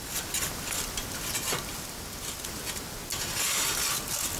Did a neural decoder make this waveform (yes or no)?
no